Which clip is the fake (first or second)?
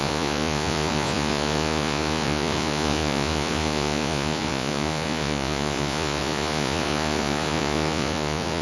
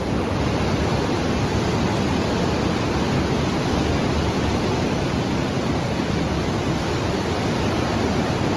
first